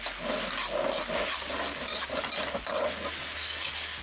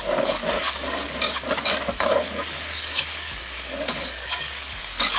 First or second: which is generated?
second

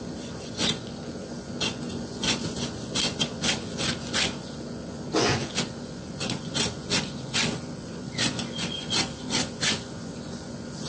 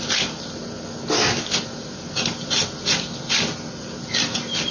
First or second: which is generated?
first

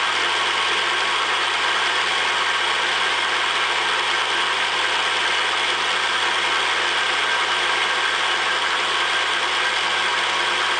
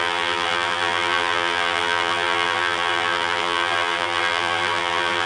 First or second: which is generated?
second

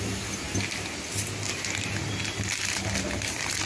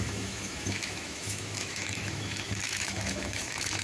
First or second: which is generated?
second